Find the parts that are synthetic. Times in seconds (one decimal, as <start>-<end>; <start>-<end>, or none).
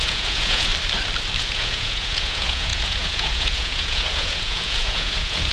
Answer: 0.0-0.7; 1.4-5.5